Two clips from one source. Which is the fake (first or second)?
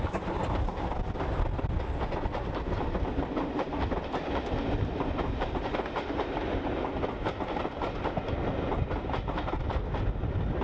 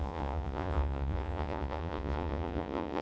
second